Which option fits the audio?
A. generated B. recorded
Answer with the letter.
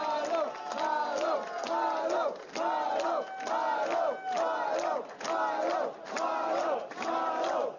B